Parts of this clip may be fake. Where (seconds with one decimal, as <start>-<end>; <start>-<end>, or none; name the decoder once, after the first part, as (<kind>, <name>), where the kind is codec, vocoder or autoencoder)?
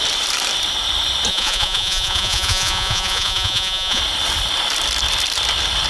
1.3-4.0 (vocoder, Vocos)